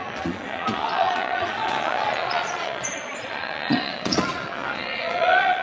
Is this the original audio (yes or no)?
no